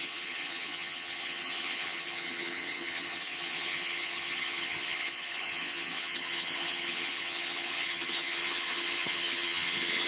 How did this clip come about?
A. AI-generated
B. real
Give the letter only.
A